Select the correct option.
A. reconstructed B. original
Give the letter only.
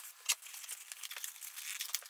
B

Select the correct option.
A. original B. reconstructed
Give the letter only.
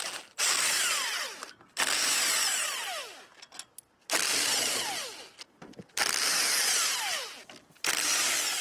A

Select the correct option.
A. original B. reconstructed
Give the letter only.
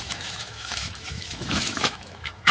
B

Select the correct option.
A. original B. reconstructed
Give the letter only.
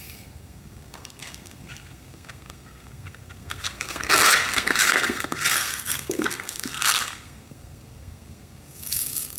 B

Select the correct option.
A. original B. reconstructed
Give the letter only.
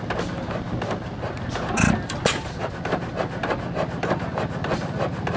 A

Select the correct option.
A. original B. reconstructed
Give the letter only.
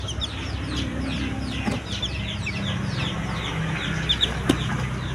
A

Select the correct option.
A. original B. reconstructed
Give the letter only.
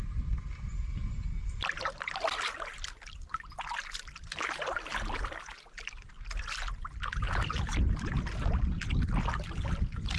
A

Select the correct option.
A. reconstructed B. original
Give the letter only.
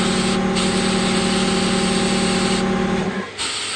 B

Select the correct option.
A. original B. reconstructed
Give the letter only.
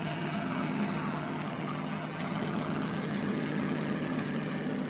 B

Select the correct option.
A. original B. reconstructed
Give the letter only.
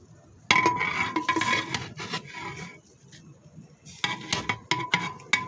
A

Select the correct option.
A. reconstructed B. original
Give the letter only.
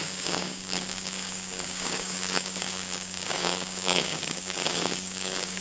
A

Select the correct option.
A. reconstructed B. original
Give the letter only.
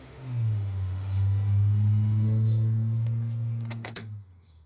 A